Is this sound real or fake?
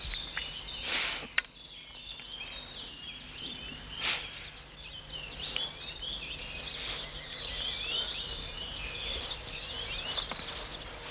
real